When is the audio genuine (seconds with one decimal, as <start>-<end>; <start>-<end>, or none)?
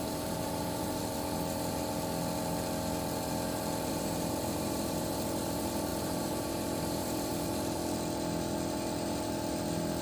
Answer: 1.0-3.9; 7.8-10.0